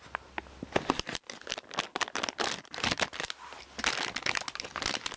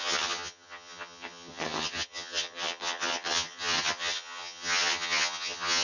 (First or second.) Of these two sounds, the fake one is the second